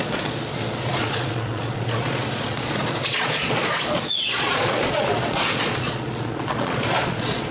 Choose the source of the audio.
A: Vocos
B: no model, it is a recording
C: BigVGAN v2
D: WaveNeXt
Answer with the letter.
A